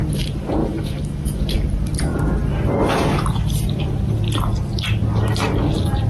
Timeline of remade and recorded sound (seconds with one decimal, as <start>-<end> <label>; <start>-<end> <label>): 0.0-0.6 recorded; 0.6-1.4 remade; 1.4-6.1 recorded

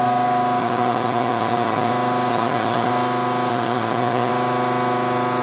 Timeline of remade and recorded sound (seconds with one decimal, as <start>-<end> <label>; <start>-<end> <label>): 0.0-0.6 recorded; 0.6-1.9 remade; 1.9-2.3 recorded; 2.3-2.9 remade; 2.9-3.5 recorded; 3.5-4.3 remade; 4.3-5.4 recorded

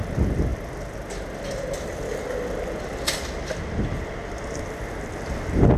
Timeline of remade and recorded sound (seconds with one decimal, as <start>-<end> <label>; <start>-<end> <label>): 0.0-5.8 recorded

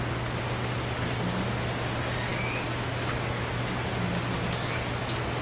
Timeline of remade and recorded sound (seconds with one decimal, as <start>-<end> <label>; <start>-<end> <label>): 0.0-5.4 recorded

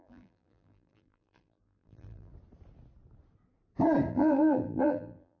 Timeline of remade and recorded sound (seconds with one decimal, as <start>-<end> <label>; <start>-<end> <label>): 0.0-2.3 remade; 2.3-4.1 recorded; 4.1-5.4 remade